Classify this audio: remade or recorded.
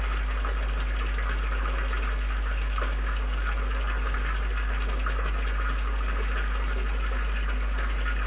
recorded